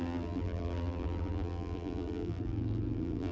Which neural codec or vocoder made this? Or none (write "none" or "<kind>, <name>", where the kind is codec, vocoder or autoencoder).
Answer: vocoder, BigVGAN v2